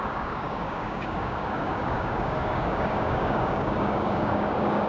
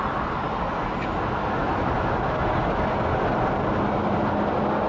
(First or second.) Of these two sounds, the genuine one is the second